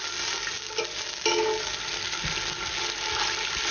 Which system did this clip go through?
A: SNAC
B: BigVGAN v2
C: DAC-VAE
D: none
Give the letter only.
D